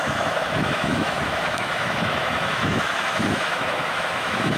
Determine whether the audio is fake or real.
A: fake